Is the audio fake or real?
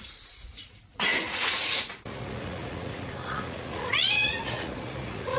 fake